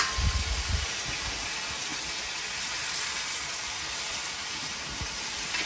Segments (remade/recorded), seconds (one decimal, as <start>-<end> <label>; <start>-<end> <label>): 0.0-5.7 recorded